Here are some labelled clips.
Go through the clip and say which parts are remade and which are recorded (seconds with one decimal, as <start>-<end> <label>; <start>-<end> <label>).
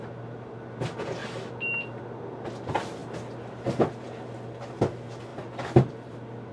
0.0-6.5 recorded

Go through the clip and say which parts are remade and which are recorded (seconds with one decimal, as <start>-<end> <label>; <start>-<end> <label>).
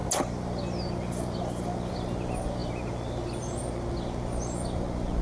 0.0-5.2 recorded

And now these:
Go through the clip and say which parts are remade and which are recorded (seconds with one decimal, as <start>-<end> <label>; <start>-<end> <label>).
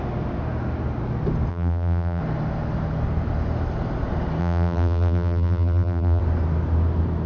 0.0-1.5 recorded; 1.5-2.2 remade; 2.2-4.4 recorded; 4.4-6.2 remade; 6.2-7.3 recorded